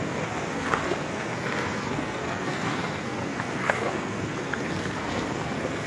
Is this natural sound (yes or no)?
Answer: no